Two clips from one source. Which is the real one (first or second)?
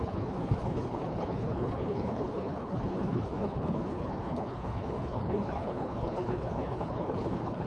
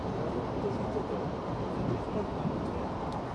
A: second